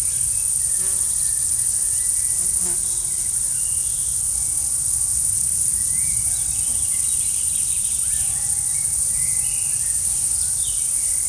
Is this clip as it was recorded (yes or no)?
yes